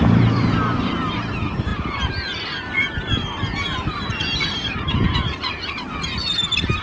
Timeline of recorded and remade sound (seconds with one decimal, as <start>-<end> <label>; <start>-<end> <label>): 0.0-6.8 remade